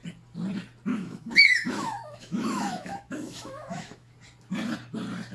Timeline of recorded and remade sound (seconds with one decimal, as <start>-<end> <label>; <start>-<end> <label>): 0.0-0.9 recorded; 0.9-4.1 remade; 4.1-5.3 recorded